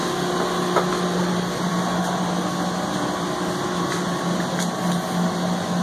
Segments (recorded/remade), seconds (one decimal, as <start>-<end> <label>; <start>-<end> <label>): 0.0-5.8 recorded